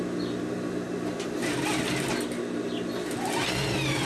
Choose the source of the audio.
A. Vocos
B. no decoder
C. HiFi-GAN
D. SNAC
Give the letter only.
B